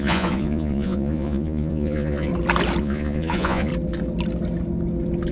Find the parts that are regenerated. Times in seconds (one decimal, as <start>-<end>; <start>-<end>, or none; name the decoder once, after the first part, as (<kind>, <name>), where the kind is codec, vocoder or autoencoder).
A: 0.0-2.3 (vocoder, Vocos); 2.8-3.7